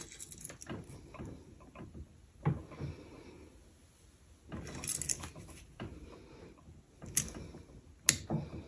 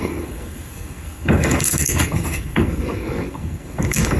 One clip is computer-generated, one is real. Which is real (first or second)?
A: first